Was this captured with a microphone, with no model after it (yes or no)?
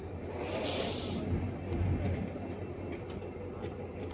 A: yes